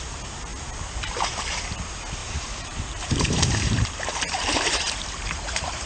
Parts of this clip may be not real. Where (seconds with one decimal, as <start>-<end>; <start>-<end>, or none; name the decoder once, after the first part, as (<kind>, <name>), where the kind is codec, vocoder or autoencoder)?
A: 0.5-1.7 (vocoder, BigVGAN v2); 2.2-5.9